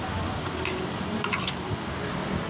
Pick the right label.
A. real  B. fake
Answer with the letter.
A